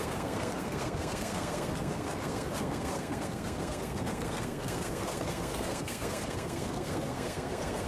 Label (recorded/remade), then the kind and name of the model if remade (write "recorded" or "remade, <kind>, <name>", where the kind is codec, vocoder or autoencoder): remade, codec, SNAC